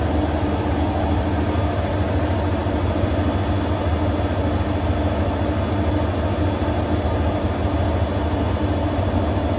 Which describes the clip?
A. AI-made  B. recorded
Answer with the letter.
B